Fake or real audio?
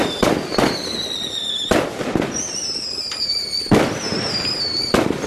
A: real